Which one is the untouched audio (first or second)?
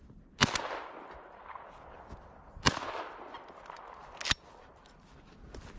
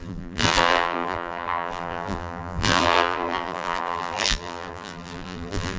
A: first